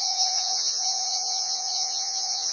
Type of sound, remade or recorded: remade